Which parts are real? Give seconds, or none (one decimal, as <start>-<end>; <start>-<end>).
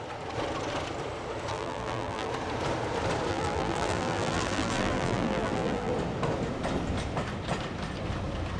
0.0-1.5; 2.3-3.3; 5.9-8.6